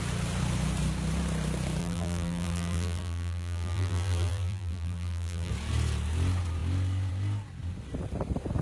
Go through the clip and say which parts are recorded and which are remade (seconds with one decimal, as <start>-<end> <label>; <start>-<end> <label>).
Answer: 0.0-1.8 recorded; 1.8-5.5 remade; 5.5-8.6 recorded